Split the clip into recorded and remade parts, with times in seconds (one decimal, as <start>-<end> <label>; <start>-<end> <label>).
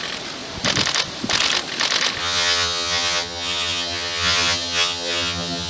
0.0-2.2 recorded; 2.2-5.7 remade